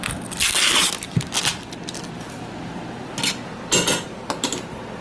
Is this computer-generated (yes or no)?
no